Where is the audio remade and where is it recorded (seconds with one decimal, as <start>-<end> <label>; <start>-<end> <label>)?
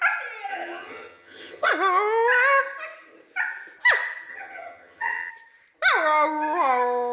0.0-0.5 recorded; 0.5-1.7 remade; 1.7-4.3 recorded; 4.3-5.3 remade; 5.3-7.1 recorded